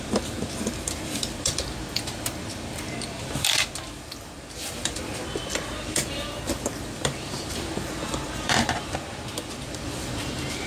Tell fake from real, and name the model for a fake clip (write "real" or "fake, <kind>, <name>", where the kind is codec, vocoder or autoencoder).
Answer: fake, vocoder, BigVGAN v2